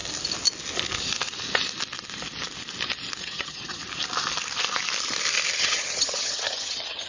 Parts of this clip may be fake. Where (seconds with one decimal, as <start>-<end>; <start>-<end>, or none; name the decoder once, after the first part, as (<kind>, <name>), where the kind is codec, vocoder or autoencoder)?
3.2-3.8 (vocoder, HiFi-GAN); 5.6-7.1